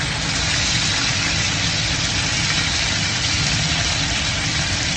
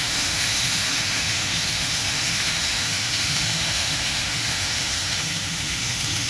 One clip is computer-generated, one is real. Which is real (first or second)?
first